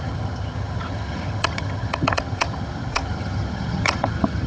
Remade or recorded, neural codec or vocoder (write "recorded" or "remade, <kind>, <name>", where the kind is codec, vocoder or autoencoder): remade, vocoder, HiFi-GAN